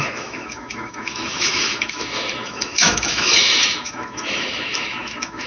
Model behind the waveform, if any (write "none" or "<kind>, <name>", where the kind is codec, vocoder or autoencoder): autoencoder, DAC-VAE